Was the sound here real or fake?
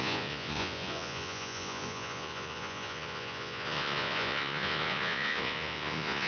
fake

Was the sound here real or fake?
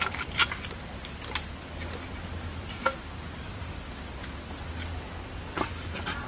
real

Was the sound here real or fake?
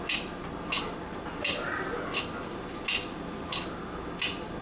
real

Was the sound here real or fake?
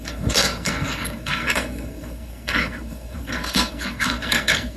fake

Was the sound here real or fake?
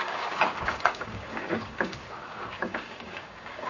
fake